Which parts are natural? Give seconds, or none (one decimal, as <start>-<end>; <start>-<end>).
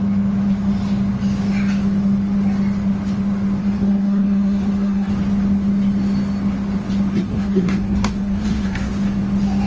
0.0-3.6; 5.1-7.1; 8.9-9.7